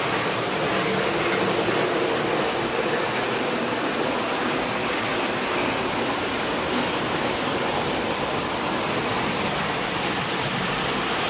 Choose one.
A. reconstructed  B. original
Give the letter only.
B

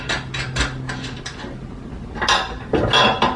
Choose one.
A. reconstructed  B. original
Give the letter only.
B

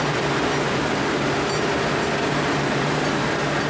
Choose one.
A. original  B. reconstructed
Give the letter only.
A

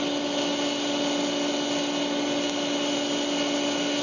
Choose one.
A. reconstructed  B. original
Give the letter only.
B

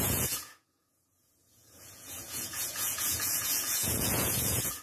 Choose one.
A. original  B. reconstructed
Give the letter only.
B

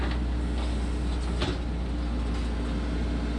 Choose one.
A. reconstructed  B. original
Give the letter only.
B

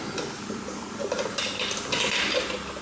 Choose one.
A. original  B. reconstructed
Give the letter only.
A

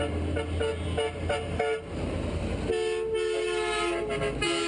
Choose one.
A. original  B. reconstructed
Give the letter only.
A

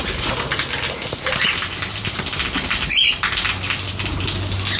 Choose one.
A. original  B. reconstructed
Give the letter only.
A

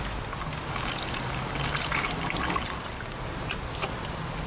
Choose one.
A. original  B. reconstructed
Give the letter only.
A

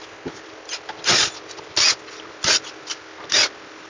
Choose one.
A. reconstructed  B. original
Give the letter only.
B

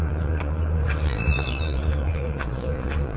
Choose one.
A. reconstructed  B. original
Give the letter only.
A